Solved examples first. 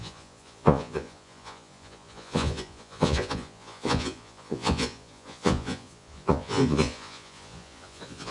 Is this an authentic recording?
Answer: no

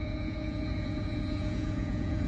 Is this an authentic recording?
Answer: no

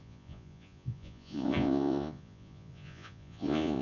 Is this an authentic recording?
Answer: no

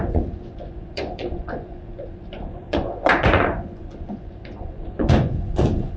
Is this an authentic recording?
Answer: no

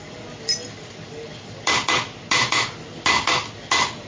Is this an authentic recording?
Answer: yes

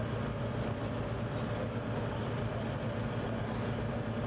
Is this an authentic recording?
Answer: yes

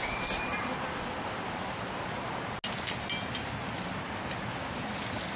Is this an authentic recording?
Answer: yes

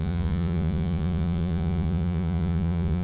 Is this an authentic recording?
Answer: no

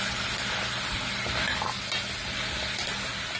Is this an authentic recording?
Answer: yes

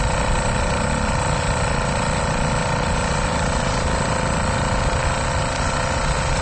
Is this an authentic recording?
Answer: yes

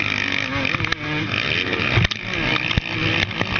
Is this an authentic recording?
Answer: yes